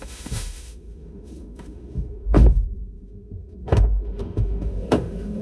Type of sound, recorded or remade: remade